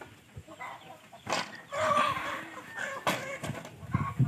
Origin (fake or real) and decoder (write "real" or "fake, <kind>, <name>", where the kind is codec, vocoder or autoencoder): real